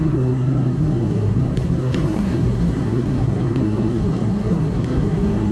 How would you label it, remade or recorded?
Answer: remade